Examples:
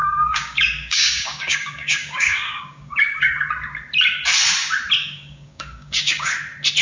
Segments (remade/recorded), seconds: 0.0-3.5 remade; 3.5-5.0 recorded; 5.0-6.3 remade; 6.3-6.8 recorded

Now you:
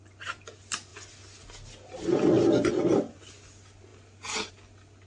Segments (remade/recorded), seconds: 0.0-5.1 recorded

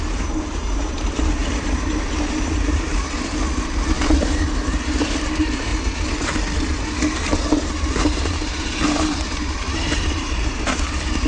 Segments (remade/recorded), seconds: 0.0-2.9 remade; 2.9-3.6 recorded; 3.6-5.7 remade; 5.7-7.6 recorded; 7.6-11.3 remade